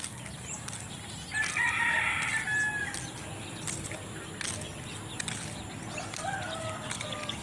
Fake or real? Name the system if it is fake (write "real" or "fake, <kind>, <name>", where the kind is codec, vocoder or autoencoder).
real